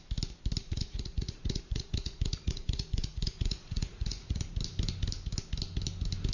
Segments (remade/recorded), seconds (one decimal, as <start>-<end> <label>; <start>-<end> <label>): 0.0-0.6 recorded; 0.6-4.4 remade; 4.4-6.3 recorded